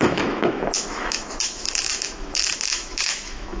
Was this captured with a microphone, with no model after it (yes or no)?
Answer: no